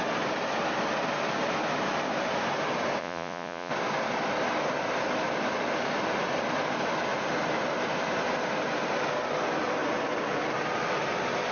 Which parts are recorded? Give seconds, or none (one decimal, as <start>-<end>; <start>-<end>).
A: 0.0-3.0; 3.7-11.5